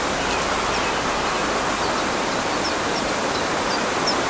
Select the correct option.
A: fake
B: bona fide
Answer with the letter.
B